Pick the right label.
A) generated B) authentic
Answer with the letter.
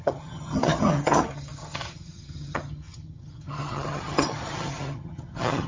A